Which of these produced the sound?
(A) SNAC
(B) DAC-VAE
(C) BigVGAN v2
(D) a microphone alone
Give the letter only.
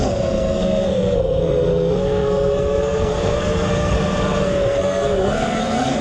A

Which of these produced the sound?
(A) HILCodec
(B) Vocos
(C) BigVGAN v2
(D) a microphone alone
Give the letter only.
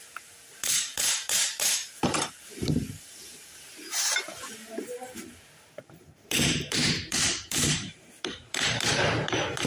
C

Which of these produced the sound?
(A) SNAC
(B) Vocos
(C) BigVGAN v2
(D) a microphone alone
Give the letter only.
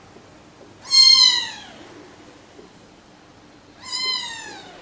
D